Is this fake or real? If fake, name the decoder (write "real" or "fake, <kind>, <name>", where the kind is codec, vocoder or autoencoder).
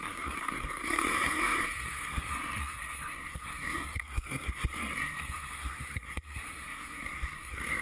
fake, codec, SNAC